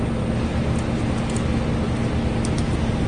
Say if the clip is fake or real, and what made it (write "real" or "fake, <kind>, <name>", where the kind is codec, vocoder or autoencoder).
real